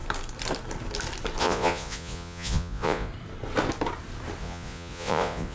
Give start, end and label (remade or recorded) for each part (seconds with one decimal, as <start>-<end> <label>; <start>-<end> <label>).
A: 0.0-1.4 recorded; 1.4-3.1 remade; 3.1-4.4 recorded; 4.4-5.5 remade

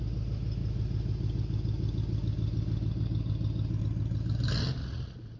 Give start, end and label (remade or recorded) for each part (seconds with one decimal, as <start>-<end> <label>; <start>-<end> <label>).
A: 0.0-4.8 recorded; 4.8-5.4 remade

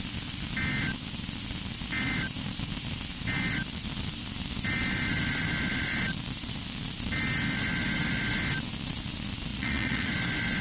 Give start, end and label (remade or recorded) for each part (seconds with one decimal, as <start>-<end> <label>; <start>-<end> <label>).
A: 0.0-9.5 recorded; 9.5-10.1 remade; 10.1-10.6 recorded

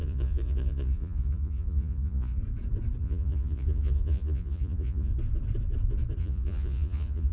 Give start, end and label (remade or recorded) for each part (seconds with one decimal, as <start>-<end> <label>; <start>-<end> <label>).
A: 0.0-2.4 remade; 2.4-3.0 recorded; 3.0-5.1 remade; 5.1-6.2 recorded; 6.2-7.3 remade

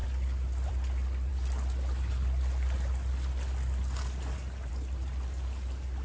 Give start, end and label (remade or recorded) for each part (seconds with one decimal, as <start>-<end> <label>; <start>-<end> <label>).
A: 0.0-6.0 recorded